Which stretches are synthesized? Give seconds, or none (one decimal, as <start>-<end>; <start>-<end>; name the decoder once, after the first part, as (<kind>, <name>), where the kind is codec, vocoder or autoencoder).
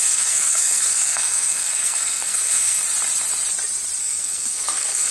0.0-2.8 (codec, SNAC); 4.0-5.1